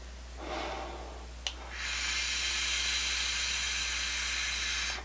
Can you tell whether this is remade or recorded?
recorded